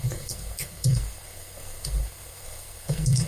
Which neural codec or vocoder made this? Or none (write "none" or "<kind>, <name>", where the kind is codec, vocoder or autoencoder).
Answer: codec, SNAC